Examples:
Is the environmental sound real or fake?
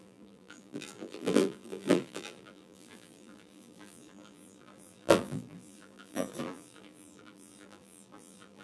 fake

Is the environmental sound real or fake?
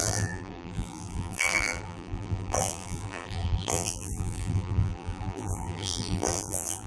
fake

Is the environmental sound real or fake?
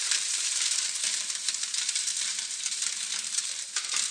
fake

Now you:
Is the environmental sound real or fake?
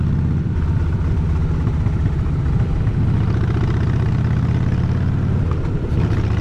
real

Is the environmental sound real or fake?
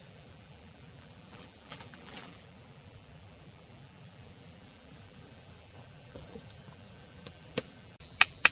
fake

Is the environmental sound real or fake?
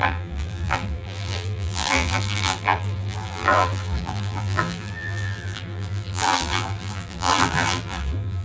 fake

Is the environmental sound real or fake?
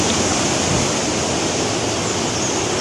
real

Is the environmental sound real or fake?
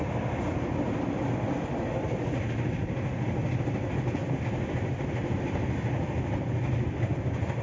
real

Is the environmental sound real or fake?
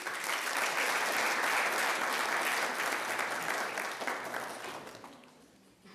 real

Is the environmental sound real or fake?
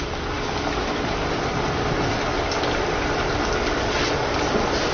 real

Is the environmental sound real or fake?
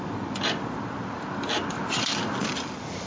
fake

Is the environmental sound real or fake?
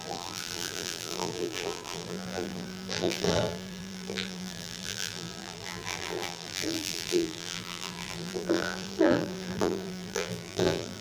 fake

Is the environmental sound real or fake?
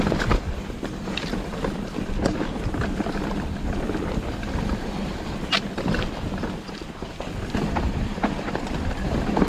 fake